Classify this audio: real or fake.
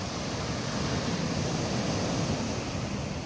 real